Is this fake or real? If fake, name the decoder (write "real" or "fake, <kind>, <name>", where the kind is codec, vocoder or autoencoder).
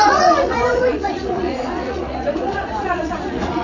fake, vocoder, Vocos